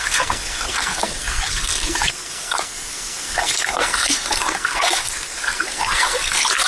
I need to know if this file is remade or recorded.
remade